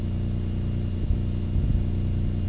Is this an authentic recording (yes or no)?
yes